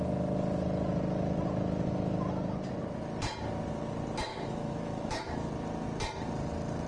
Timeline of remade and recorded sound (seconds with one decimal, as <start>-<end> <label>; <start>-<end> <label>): 0.0-4.3 recorded; 4.3-5.5 remade; 5.5-6.9 recorded